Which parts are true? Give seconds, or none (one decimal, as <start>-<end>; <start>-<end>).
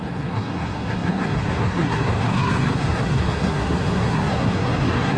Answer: none